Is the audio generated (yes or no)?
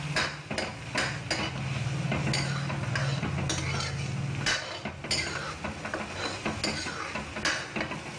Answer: no